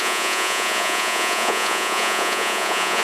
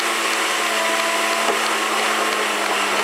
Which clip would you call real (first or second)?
second